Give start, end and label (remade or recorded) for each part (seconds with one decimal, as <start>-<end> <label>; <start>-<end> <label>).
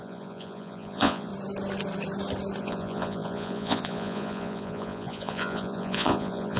0.0-1.3 remade; 1.3-2.6 recorded; 2.6-6.6 remade